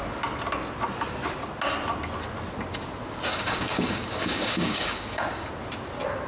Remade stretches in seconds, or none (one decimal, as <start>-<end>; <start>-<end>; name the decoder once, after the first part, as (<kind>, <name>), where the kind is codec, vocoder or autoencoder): 3.3-5.5 (codec, DAC)